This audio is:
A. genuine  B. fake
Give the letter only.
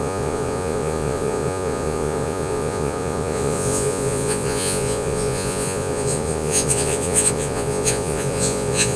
B